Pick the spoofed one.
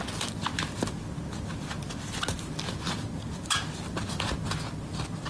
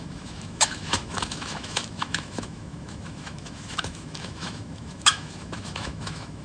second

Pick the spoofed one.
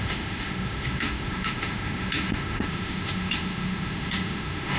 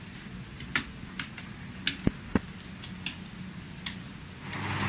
first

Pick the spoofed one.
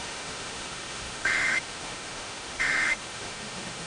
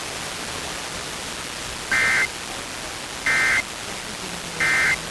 first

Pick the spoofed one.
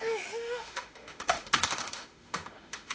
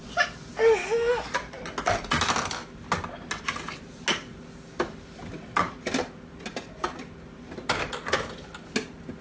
first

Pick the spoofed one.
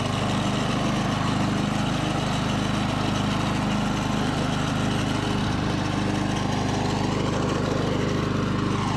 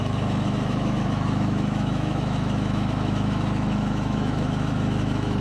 second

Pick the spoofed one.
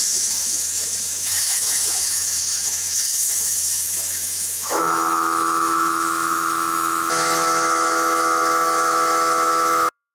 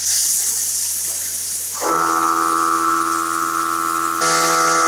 first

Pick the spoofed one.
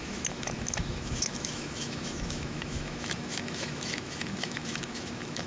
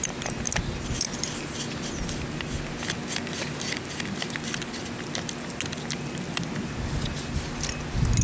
first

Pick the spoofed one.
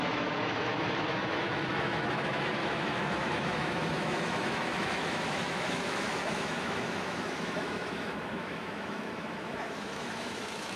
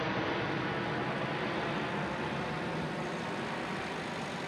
first